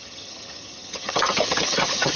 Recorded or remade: remade